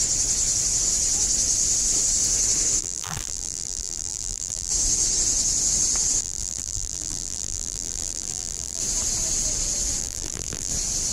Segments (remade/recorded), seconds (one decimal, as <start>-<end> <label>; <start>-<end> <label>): 0.0-2.8 recorded; 2.8-4.7 remade; 4.7-6.2 recorded; 6.2-8.8 remade; 8.8-10.0 recorded; 10.0-10.7 remade; 10.7-11.1 recorded